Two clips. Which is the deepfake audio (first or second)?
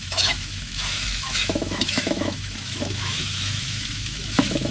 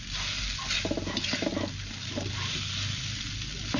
first